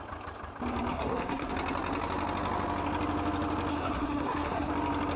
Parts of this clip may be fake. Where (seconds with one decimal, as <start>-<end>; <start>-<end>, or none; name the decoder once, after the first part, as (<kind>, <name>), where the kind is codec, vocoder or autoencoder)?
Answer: 0.9-1.5 (codec, SNAC); 3.7-4.7